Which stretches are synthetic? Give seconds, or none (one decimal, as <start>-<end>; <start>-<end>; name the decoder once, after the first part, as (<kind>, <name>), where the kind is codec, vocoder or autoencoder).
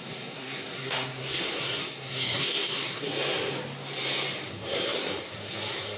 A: 0.0-3.1 (codec, SNAC); 4.5-6.0